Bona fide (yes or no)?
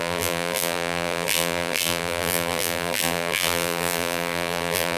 no